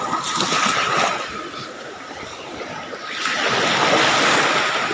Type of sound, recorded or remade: recorded